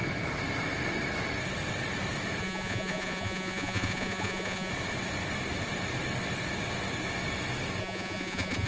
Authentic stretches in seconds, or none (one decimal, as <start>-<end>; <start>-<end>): 0.0-2.4; 4.7-7.8